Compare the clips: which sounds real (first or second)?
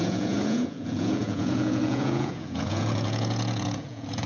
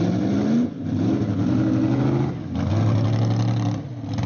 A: second